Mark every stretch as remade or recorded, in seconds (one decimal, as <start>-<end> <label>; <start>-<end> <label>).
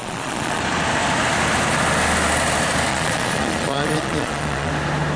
0.0-0.6 remade; 0.6-2.9 recorded; 2.9-4.7 remade; 4.7-5.2 recorded